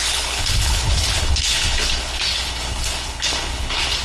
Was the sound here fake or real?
fake